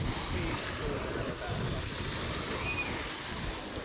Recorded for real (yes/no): yes